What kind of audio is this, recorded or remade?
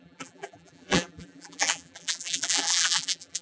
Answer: remade